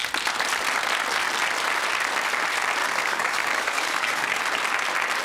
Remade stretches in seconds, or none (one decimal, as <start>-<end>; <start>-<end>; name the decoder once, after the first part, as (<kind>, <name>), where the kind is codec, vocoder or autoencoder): 2.8-4.4 (codec, DAC)